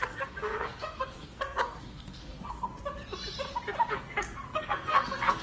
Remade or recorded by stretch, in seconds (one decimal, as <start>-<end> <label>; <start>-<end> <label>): 0.0-2.7 remade; 2.7-3.9 recorded; 3.9-5.4 remade